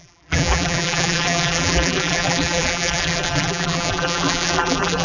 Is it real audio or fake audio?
fake